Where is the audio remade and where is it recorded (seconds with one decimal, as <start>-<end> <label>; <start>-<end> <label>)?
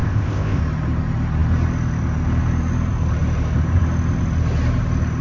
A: 0.0-0.6 remade; 0.6-5.2 recorded